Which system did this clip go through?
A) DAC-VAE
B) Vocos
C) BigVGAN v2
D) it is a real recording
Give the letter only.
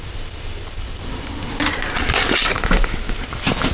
D